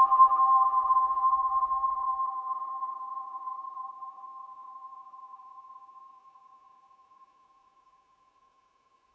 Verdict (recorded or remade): remade